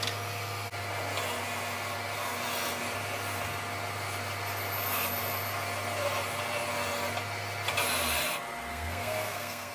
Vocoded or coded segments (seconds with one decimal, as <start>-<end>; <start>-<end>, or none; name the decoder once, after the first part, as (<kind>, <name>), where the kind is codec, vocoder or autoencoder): 8.7-9.7 (codec, SNAC)